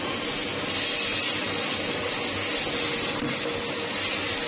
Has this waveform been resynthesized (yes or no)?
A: no